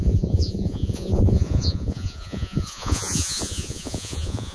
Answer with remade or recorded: remade